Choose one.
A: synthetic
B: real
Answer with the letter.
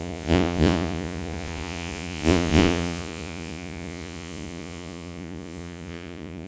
A